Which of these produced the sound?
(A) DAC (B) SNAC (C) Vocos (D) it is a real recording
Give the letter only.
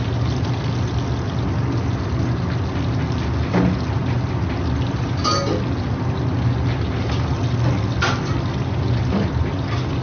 D